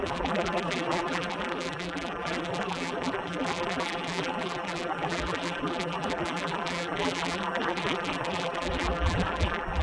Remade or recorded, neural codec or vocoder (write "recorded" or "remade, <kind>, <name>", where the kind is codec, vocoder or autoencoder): remade, vocoder, BigVGAN v2